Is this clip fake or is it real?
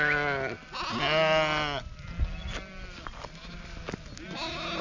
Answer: real